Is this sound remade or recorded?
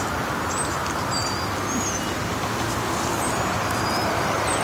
recorded